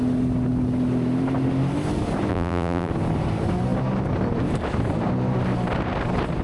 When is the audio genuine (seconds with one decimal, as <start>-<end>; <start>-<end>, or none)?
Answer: 0.0-2.3; 2.9-6.4